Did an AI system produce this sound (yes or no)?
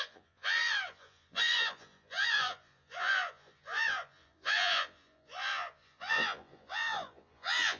yes